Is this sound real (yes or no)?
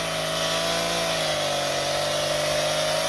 yes